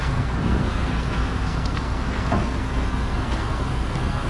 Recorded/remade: remade